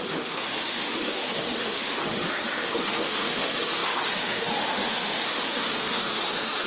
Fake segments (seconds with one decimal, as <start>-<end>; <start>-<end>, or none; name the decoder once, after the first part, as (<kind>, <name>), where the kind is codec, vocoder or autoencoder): 0.0-6.7 (autoencoder, DAC-VAE)